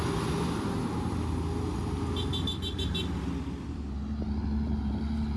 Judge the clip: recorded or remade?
recorded